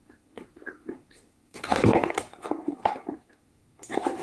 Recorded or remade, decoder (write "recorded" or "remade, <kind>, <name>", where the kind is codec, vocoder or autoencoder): remade, codec, SNAC